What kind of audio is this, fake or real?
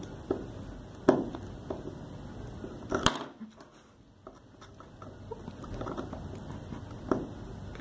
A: real